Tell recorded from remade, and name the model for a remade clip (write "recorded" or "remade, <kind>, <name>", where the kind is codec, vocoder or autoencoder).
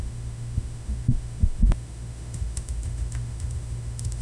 remade, autoencoder, DAC-VAE